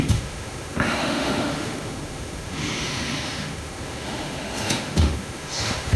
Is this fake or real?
fake